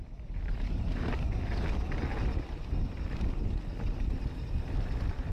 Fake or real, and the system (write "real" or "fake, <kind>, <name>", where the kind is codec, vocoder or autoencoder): real